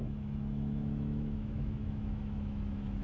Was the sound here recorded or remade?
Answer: remade